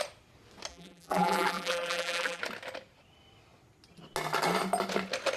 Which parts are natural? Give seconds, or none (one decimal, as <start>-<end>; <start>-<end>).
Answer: 0.0-0.7; 2.4-5.4